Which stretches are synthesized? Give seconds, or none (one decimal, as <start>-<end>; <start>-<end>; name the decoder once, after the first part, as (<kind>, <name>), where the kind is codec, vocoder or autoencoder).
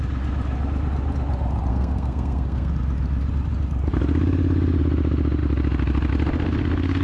1.7-2.7 (codec, SNAC)